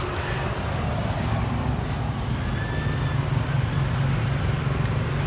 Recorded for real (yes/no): yes